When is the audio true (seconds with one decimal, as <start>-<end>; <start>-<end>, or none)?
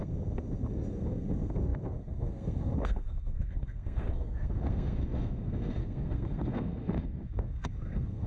none